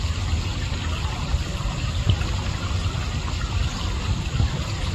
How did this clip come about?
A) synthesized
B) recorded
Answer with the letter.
B